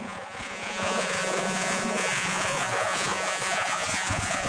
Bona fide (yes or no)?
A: no